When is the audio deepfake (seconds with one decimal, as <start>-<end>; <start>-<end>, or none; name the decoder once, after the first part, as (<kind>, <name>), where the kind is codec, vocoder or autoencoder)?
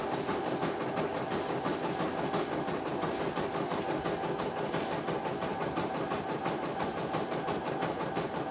5.5-8.5 (vocoder, BigVGAN v2)